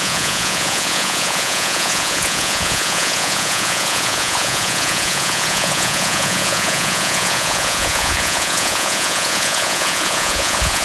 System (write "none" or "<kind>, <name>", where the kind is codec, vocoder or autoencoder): vocoder, Vocos